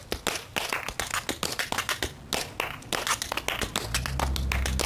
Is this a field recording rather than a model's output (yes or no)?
yes